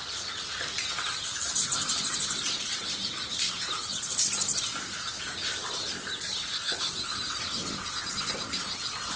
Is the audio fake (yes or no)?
yes